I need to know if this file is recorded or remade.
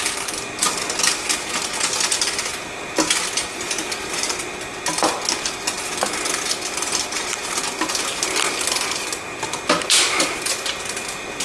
recorded